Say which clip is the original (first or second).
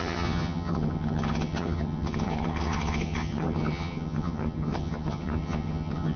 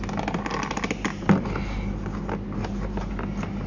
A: second